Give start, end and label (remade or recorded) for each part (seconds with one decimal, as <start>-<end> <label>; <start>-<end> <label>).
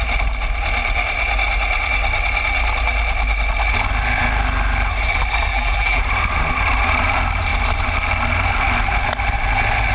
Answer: 0.0-5.5 recorded; 5.5-6.0 remade; 6.0-9.9 recorded